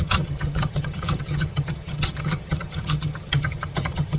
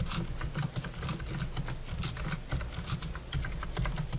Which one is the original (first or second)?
second